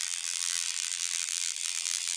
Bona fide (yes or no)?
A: no